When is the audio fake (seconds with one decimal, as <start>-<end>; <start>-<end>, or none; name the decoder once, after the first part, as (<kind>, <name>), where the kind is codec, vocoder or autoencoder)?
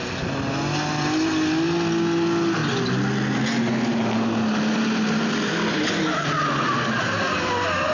none